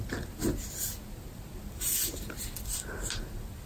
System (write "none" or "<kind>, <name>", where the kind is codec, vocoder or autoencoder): none